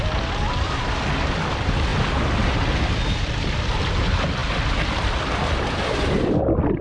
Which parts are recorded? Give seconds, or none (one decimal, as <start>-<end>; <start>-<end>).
0.0-6.8

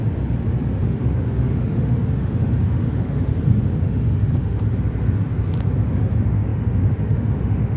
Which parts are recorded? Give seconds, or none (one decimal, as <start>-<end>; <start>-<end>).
0.0-0.8; 3.3-3.8; 4.6-5.9

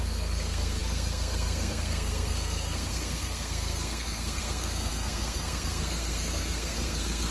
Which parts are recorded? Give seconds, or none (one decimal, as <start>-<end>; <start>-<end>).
none

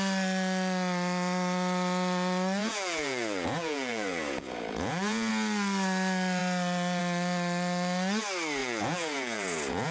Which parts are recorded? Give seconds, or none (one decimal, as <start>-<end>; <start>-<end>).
0.0-2.6; 5.3-8.6

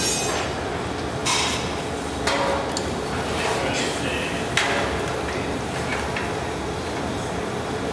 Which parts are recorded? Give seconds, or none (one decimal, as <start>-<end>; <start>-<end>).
0.0-7.9

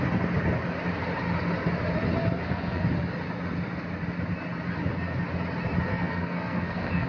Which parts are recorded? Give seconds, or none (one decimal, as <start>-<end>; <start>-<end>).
0.0-2.4; 2.9-5.9

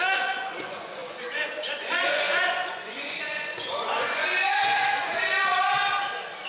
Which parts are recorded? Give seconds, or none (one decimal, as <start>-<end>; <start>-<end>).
5.5-6.5

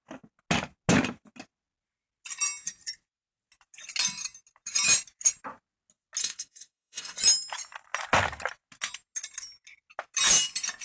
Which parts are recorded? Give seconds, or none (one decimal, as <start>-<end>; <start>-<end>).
0.0-6.2; 7.2-10.8